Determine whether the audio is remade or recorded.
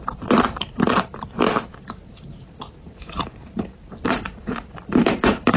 remade